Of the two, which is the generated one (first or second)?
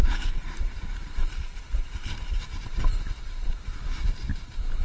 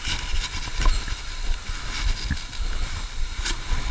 first